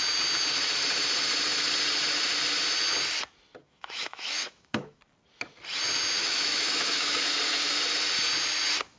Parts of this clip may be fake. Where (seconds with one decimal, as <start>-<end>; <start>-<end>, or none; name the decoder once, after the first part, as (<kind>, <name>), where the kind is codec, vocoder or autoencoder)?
3.6-5.0 (autoencoder, DAC-VAE); 6.2-7.2